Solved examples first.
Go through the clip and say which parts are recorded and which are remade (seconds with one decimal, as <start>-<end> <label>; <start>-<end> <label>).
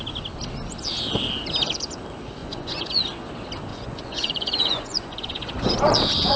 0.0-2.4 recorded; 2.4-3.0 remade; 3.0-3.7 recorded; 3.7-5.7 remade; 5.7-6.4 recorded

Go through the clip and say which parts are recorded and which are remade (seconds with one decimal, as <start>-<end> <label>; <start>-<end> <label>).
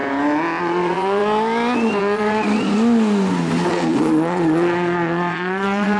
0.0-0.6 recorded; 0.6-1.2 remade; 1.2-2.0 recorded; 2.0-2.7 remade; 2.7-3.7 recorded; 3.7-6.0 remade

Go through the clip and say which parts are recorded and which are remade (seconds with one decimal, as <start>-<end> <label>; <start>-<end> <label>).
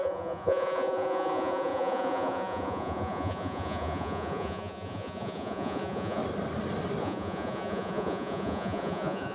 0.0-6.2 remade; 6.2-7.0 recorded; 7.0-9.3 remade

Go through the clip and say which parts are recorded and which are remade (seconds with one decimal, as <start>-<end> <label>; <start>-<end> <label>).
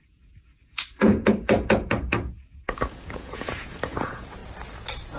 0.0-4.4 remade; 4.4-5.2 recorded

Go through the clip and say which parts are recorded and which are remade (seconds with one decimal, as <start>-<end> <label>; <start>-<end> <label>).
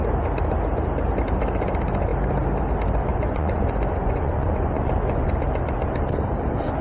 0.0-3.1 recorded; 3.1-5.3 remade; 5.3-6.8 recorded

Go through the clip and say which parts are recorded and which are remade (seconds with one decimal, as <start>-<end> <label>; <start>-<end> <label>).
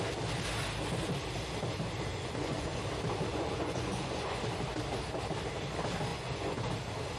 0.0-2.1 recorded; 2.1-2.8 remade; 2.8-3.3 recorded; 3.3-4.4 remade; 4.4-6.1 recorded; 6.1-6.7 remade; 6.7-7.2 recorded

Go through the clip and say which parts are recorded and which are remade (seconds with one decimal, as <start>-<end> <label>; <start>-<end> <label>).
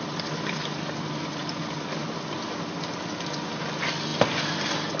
0.0-5.0 recorded